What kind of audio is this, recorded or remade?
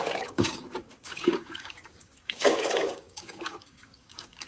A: remade